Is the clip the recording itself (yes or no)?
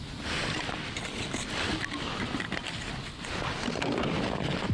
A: yes